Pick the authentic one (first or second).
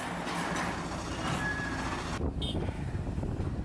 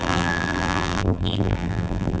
first